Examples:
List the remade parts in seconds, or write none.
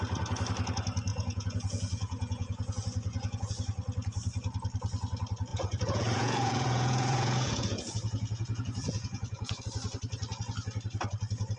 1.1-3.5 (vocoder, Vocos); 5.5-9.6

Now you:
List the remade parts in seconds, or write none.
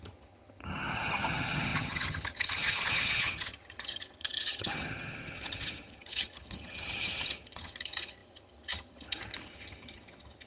0.0-10.5 (vocoder, HiFi-GAN)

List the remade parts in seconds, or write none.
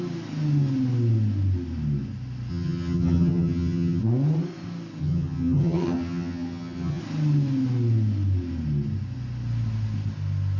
2.5-4.0 (vocoder, HiFi-GAN); 5.0-7.0